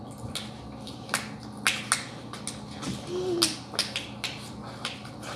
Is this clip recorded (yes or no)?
yes